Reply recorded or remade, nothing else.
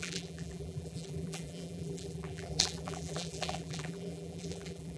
remade